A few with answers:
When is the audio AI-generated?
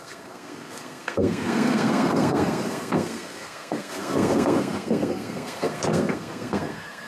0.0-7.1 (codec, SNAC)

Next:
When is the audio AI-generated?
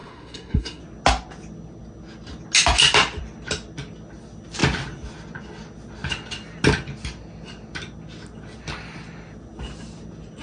0.0-0.8 (codec, SNAC)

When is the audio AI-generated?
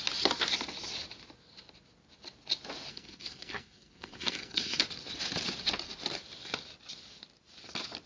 2.9-4.8 (codec, SNAC)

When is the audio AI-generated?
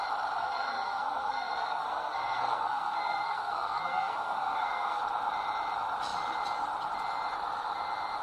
0.4-5.0 (codec, SNAC)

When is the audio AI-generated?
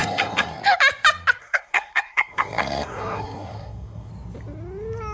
0.0-0.6 (codec, SNAC); 1.4-4.1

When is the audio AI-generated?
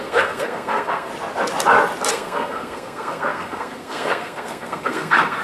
0.0-1.1 (codec, SNAC); 2.1-5.4